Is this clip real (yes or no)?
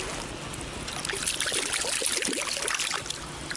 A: yes